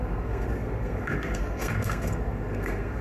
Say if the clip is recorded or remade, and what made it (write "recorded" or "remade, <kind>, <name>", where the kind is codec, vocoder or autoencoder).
remade, codec, SNAC